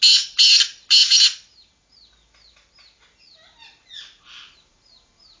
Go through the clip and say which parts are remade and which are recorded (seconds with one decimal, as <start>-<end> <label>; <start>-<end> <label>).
0.0-5.4 recorded